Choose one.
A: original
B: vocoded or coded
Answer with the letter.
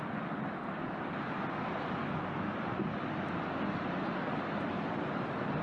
A